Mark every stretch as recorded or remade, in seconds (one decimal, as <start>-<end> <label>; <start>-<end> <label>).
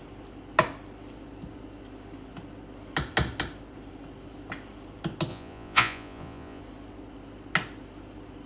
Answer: 0.0-5.3 recorded; 5.3-6.6 remade; 6.6-8.5 recorded